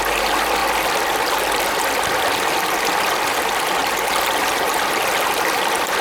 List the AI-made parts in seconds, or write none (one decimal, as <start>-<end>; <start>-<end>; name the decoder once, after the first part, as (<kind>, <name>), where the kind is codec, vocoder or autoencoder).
3.8-4.4 (vocoder, BigVGAN v2)